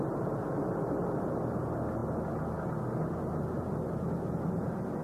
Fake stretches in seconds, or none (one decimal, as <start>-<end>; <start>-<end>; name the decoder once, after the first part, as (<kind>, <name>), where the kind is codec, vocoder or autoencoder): none